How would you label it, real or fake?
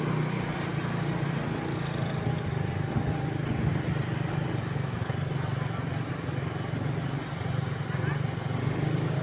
real